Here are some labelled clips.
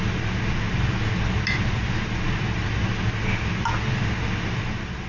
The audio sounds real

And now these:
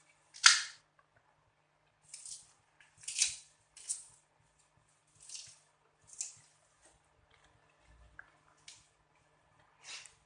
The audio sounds real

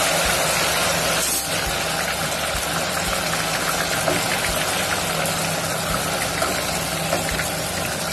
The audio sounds real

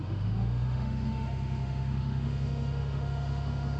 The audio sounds fake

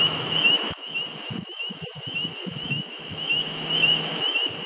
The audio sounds fake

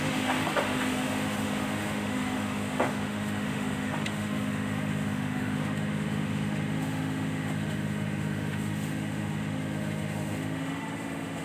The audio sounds fake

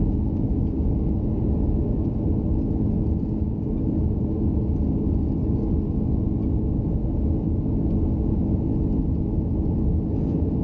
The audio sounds real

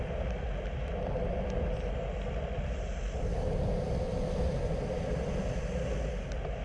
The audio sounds real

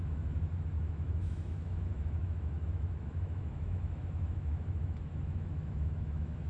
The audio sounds fake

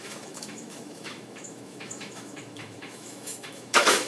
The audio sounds fake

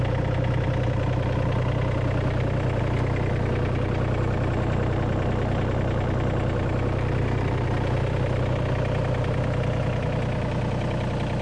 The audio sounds real